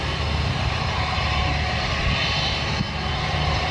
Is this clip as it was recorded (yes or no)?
yes